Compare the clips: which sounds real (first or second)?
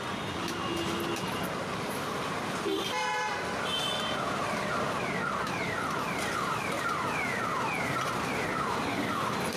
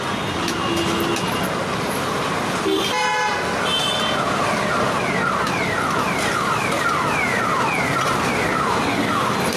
second